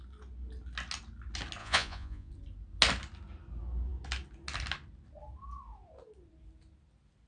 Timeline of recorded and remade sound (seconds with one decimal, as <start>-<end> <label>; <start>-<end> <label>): 0.0-1.6 recorded; 1.6-2.3 remade; 2.3-7.3 recorded